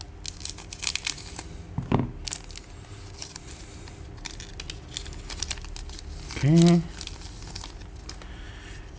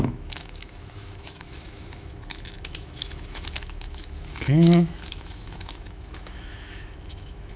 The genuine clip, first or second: first